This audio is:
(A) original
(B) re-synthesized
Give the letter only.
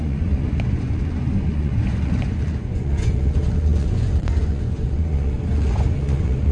B